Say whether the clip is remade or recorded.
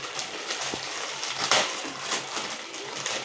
remade